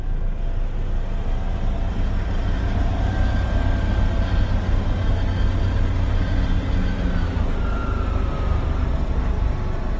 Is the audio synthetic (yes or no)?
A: no